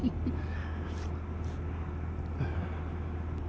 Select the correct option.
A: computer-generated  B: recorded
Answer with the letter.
B